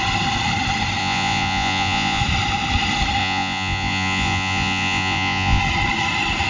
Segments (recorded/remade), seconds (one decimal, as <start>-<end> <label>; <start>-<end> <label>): 0.0-1.0 recorded; 1.0-2.2 remade; 2.2-3.2 recorded; 3.2-5.6 remade; 5.6-6.5 recorded